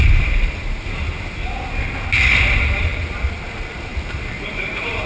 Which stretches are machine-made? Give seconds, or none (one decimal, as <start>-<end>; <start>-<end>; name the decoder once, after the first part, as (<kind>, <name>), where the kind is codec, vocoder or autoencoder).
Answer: none